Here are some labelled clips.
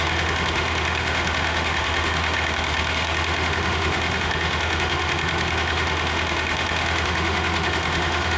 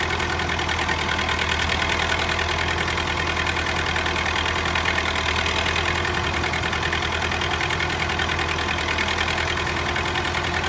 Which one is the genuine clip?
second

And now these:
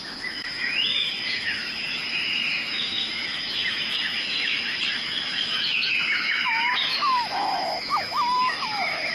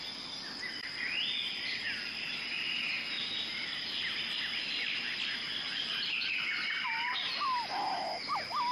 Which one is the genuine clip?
second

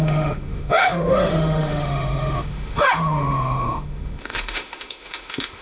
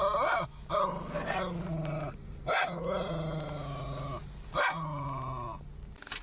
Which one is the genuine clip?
second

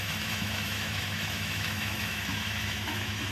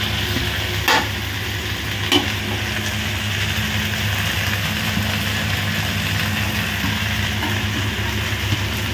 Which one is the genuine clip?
second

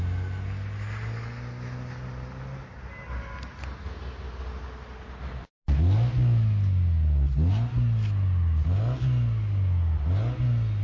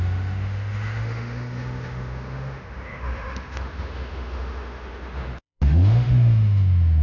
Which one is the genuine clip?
first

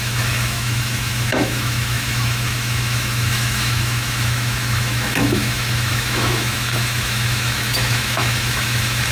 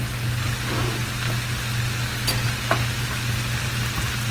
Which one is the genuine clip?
second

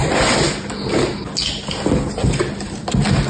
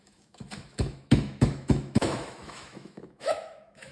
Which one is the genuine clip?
first